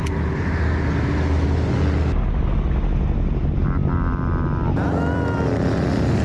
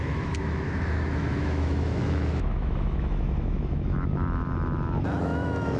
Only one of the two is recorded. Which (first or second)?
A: first